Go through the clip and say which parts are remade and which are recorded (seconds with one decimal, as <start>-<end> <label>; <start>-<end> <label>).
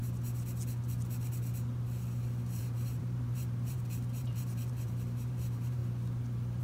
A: 0.0-2.6 recorded; 2.6-5.8 remade; 5.8-6.6 recorded